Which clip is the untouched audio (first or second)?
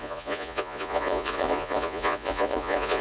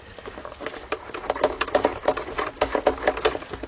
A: second